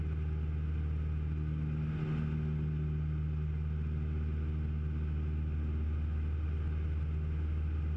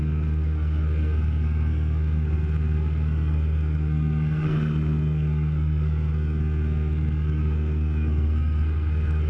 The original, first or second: first